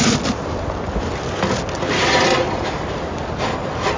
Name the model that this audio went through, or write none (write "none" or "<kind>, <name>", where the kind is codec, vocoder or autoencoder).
none